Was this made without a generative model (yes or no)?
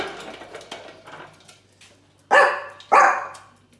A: yes